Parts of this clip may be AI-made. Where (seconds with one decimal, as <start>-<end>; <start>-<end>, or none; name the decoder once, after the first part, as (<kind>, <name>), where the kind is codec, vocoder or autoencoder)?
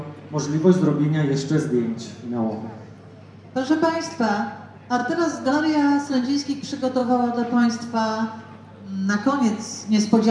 none